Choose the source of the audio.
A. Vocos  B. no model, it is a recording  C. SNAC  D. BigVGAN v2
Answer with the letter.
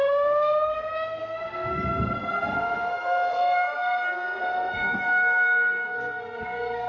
C